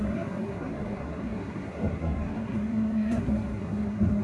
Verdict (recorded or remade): remade